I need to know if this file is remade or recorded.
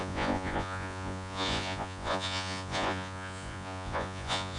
remade